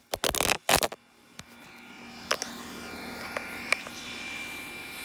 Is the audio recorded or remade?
recorded